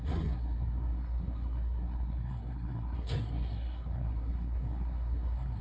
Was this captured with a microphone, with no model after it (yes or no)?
no